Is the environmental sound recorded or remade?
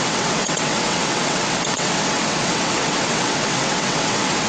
remade